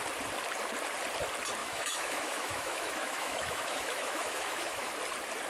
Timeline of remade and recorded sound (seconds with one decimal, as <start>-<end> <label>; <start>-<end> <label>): 0.0-1.6 recorded; 1.6-4.9 remade; 4.9-5.5 recorded